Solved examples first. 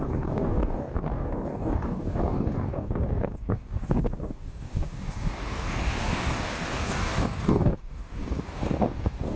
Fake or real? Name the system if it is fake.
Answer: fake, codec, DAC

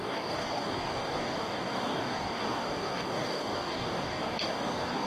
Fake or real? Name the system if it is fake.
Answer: fake, codec, DAC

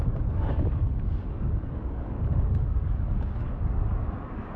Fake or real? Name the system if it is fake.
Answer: fake, codec, DAC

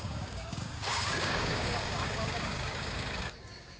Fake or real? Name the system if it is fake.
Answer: fake, codec, DAC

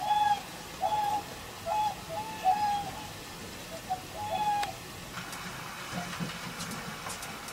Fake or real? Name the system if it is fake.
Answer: real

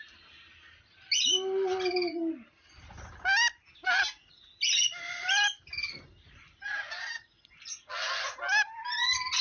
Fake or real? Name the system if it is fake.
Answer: real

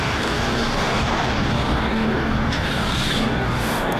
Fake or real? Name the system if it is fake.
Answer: fake, codec, DAC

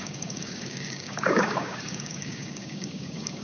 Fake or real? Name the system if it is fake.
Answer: fake, codec, DAC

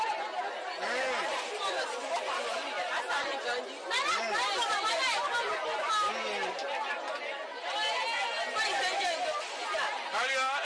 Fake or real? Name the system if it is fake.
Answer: real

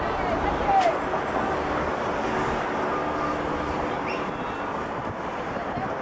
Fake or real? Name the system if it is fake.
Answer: real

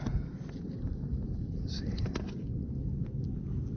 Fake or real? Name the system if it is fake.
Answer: real